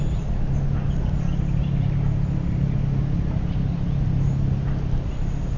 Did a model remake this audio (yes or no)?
no